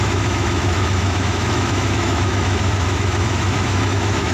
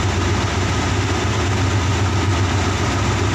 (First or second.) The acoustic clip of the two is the second